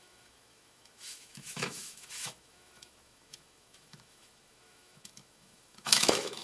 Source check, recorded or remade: remade